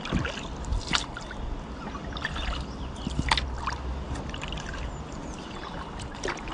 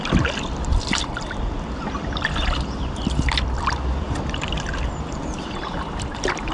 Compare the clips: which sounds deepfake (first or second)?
second